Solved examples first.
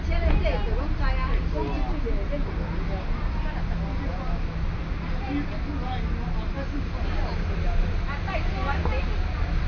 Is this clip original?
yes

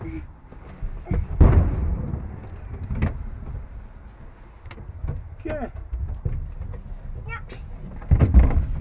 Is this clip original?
yes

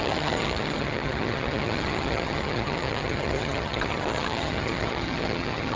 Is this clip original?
no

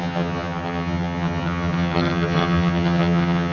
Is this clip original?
no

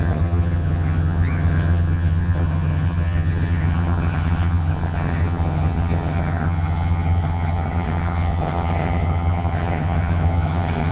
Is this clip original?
no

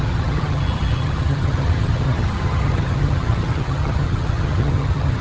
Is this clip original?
no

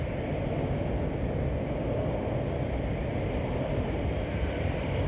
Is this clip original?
yes